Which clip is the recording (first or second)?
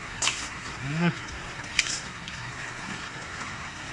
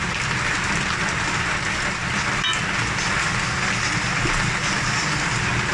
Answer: second